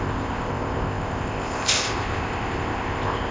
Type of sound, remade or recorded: remade